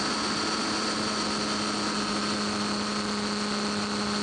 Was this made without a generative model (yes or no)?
no